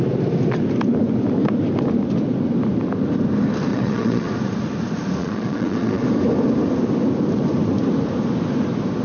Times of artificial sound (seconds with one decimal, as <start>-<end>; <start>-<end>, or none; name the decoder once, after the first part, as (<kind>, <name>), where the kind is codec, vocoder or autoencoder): 3.7-4.3 (vocoder, Vocos); 5.2-6.0